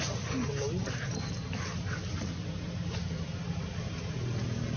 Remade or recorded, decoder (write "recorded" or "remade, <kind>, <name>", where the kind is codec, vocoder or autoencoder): recorded